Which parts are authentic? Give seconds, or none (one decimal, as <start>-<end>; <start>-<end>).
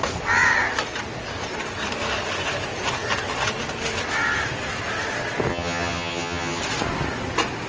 0.0-5.5; 6.6-7.7